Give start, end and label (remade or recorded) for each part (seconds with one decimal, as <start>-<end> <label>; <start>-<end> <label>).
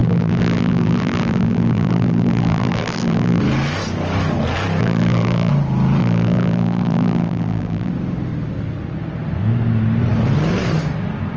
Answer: 0.0-3.4 remade; 3.4-4.8 recorded; 4.8-5.5 remade; 5.5-6.0 recorded; 6.0-7.9 remade; 7.9-11.4 recorded